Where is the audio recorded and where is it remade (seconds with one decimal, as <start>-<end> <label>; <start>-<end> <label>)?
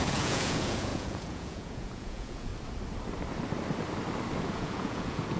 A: 0.0-2.5 remade; 2.5-4.5 recorded; 4.5-5.4 remade